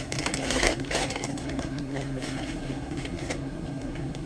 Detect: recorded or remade remade